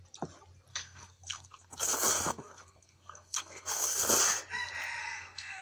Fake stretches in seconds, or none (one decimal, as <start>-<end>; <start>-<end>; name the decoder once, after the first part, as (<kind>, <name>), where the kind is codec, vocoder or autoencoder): 0.7-1.9 (codec, SNAC); 2.3-4.1; 5.0-5.6